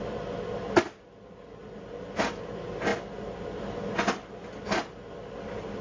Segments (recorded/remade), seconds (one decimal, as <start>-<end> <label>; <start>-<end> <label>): 0.0-5.8 recorded